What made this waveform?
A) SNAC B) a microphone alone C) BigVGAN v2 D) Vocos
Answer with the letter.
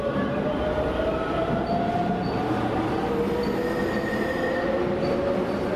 B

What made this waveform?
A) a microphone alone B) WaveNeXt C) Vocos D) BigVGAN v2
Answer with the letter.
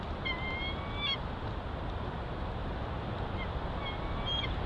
A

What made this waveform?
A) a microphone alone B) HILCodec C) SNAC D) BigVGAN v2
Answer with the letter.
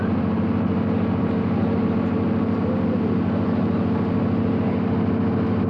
A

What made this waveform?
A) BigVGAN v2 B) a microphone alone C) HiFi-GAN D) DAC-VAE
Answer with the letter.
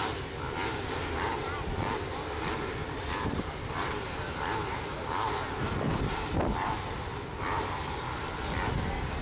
A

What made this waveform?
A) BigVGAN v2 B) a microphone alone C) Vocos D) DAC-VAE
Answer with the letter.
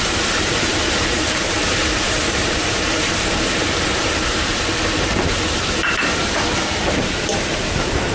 A